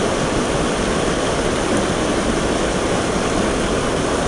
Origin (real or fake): real